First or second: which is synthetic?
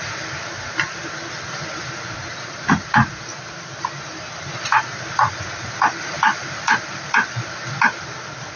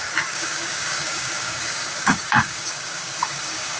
second